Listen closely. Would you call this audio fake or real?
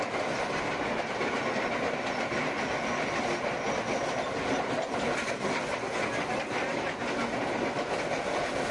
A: real